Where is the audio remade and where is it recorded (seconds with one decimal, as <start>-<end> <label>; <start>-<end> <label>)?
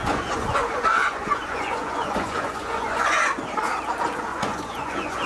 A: 0.0-3.2 remade; 3.2-4.3 recorded; 4.3-5.3 remade